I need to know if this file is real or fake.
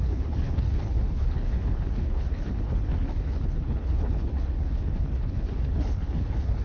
fake